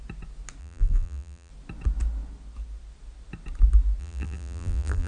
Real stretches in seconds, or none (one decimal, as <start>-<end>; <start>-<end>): 0.0-0.6; 1.5-4.0